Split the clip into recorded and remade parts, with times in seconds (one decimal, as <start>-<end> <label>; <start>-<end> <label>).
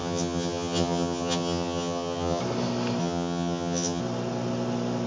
0.0-2.4 remade; 2.4-3.0 recorded; 3.0-4.0 remade; 4.0-5.1 recorded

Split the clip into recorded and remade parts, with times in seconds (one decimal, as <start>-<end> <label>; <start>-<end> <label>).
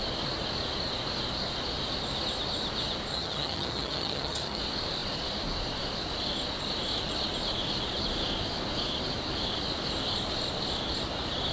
0.0-3.1 recorded; 3.1-4.6 remade; 4.6-11.5 recorded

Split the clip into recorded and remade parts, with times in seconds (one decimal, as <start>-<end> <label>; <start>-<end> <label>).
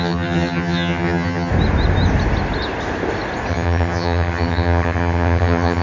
0.0-1.5 remade; 1.5-3.5 recorded; 3.5-5.8 remade